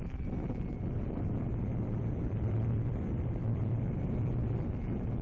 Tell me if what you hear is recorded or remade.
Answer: remade